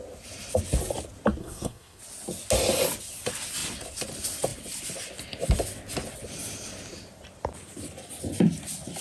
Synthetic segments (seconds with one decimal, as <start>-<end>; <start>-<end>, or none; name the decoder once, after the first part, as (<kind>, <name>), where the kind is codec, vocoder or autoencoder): 1.4-2.0 (codec, SNAC)